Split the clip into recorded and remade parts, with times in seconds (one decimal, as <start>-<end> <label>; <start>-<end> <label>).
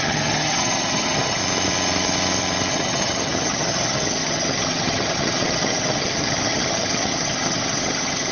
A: 0.0-1.4 remade; 1.4-2.7 recorded; 2.7-8.3 remade